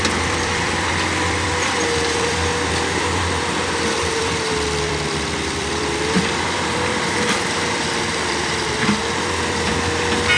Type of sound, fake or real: fake